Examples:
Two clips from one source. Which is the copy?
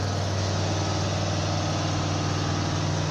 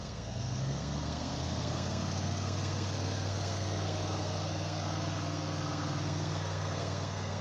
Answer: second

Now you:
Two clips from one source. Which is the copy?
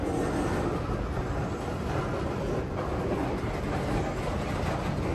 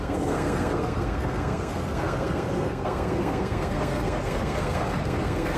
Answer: second